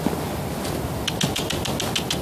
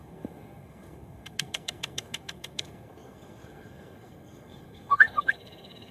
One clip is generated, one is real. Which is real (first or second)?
first